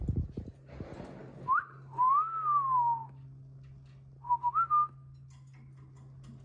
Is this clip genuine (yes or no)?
yes